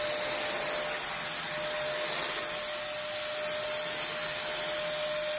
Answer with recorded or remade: recorded